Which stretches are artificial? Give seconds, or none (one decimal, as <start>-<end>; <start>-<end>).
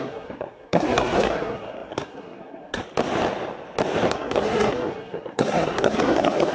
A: 0.0-2.8; 4.1-6.5